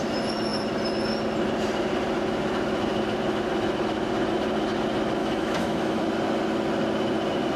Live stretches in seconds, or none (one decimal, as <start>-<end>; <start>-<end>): 0.0-5.2; 6.0-7.6